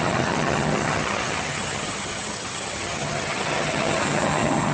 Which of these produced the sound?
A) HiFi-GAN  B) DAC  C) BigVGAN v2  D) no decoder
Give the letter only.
A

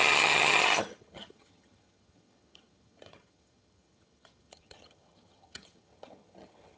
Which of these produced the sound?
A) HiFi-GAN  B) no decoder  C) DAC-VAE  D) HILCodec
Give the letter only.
A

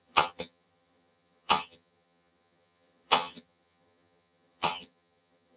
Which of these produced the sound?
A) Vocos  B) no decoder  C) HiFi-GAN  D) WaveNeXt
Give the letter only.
C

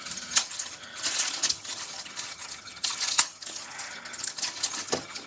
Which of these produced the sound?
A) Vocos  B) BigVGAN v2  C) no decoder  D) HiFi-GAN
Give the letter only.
D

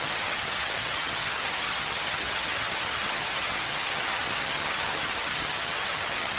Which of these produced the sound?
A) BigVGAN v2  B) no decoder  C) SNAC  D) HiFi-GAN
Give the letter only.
D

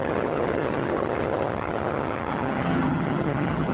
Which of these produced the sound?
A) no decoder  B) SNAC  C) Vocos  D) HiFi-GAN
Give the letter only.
D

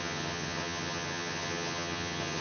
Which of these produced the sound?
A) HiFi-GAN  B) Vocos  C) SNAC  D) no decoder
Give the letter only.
A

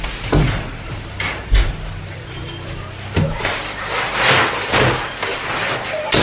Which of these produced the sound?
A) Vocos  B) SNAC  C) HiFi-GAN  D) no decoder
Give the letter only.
D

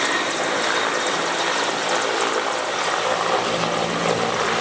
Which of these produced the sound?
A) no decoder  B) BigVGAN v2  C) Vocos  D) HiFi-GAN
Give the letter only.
A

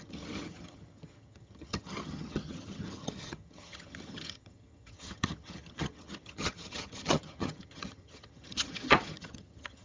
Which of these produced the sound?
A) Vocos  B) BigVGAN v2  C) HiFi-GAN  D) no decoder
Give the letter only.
C